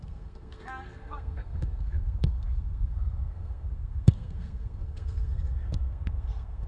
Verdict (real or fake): fake